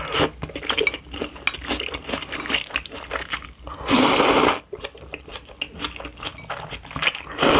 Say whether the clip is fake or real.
real